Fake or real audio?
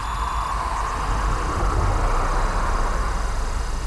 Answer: real